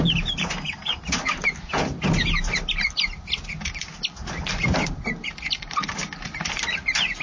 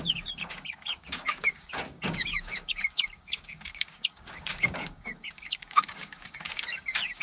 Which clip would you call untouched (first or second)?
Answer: first